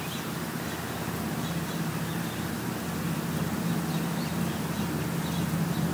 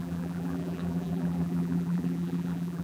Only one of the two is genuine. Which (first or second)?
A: first